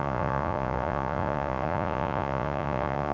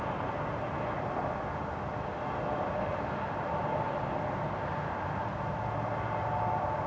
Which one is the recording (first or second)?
second